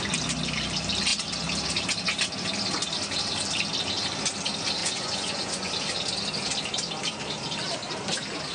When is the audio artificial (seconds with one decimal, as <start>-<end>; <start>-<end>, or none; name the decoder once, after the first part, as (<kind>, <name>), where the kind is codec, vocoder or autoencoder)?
4.8-5.7 (vocoder, Vocos)